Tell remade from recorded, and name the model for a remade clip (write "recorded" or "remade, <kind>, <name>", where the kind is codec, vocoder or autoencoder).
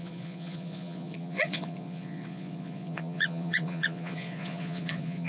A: remade, vocoder, Vocos